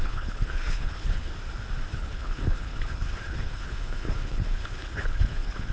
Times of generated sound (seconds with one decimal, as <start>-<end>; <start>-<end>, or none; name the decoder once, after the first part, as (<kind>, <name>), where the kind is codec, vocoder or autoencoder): 0.0-1.3 (codec, HILCodec); 1.9-5.7